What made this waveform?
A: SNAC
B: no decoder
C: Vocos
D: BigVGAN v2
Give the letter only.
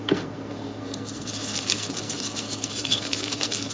A